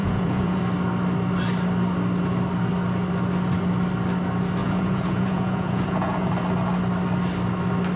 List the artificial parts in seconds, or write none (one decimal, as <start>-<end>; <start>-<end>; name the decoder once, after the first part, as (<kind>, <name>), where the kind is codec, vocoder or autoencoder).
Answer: 0.0-0.6 (vocoder, Vocos); 4.6-6.3